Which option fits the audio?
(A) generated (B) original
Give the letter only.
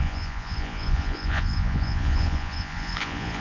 A